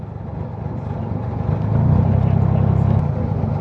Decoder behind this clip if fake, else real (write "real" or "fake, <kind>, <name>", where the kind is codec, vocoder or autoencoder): real